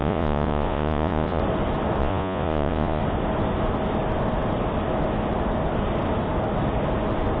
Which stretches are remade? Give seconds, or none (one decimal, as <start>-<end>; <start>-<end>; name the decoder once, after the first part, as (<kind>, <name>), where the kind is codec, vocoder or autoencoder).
0.0-1.4 (vocoder, Vocos); 2.0-3.0

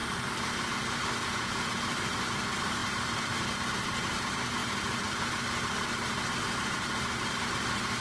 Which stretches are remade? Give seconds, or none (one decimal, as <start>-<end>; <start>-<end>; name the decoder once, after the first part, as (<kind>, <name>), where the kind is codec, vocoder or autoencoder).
1.2-1.8 (vocoder, Vocos)

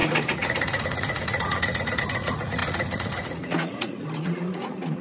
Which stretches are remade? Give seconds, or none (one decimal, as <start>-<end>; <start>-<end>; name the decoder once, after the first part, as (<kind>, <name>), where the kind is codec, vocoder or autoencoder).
0.0-5.0 (vocoder, Vocos)

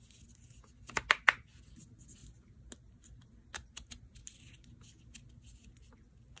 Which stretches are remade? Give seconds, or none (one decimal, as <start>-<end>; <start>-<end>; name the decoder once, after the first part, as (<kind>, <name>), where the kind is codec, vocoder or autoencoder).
none

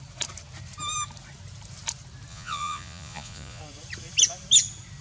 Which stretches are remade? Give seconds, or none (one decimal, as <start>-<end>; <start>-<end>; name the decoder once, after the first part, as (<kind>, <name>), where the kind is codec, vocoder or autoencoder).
2.3-3.6 (vocoder, Vocos)

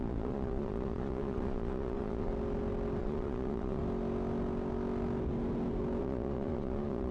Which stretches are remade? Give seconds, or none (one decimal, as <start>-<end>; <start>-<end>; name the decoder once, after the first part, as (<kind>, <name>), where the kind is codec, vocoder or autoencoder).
0.0-2.3 (vocoder, Vocos); 3.0-3.8; 6.0-7.1

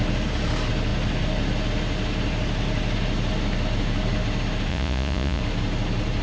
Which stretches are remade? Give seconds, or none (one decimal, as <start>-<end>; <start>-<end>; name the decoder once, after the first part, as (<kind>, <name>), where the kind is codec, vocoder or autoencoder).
4.7-5.4 (vocoder, Vocos)